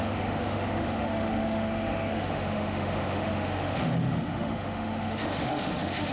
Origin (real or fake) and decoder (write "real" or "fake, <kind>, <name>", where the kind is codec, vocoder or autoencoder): fake, autoencoder, DAC-VAE